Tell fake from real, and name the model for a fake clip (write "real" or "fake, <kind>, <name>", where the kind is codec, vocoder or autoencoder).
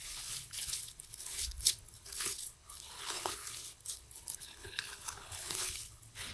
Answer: fake, codec, HILCodec